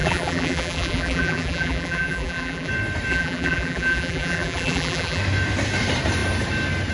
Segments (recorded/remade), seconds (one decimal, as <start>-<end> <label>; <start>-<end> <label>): 0.0-2.7 remade; 2.7-3.1 recorded; 3.1-5.2 remade; 5.2-6.9 recorded